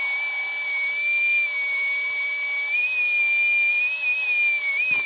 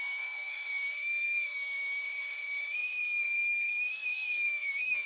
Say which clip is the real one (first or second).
first